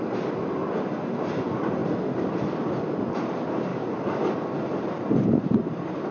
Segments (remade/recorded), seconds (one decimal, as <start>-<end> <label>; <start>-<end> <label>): 0.0-6.1 recorded